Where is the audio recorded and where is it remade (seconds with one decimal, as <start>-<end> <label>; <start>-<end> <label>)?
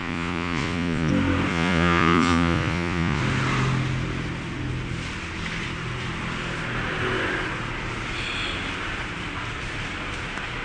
0.0-1.1 remade; 1.1-1.5 recorded; 1.5-3.2 remade; 3.2-10.6 recorded